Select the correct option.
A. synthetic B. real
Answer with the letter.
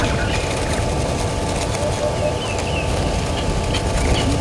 B